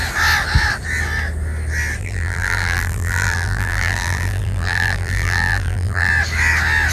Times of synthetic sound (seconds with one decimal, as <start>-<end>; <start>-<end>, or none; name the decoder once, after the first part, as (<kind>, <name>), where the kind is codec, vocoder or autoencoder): 2.0-6.1 (vocoder, BigVGAN v2)